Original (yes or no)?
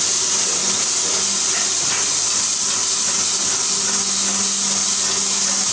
yes